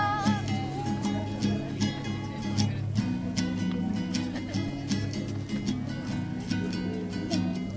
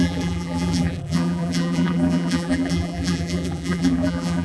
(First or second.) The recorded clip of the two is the first